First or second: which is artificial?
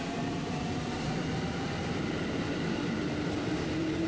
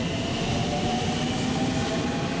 first